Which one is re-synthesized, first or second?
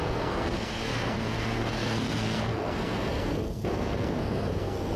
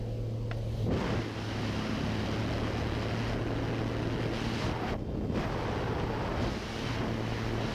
first